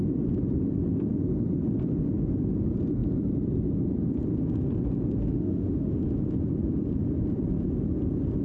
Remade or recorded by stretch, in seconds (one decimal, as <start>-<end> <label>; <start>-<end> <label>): 0.0-5.2 recorded; 5.2-6.0 remade; 6.0-8.4 recorded